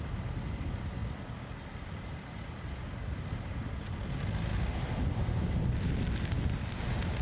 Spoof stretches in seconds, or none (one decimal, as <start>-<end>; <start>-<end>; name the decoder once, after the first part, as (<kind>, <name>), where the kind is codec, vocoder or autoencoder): none